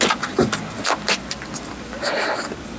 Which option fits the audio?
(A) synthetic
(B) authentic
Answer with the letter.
B